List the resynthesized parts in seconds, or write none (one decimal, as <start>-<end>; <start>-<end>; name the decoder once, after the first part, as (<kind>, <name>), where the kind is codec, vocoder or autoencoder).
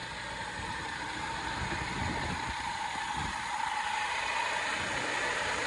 0.7-1.9 (vocoder, BigVGAN v2); 5.3-5.7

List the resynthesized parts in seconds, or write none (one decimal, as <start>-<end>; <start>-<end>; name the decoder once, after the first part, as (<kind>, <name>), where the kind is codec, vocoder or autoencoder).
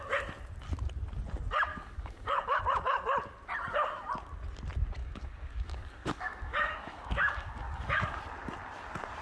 1.7-2.6 (codec, DAC); 5.0-8.2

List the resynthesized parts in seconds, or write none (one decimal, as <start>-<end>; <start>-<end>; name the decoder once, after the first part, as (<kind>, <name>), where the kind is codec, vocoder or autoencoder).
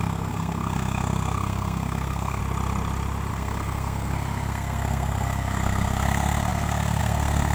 0.0-2.4 (codec, SNAC); 3.3-7.5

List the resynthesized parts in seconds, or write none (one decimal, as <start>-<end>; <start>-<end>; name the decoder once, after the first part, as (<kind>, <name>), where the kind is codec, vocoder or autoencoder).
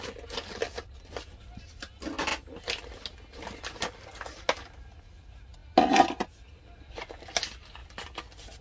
none